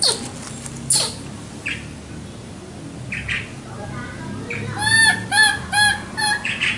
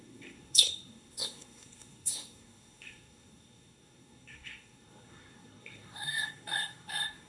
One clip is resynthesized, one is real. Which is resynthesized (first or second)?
second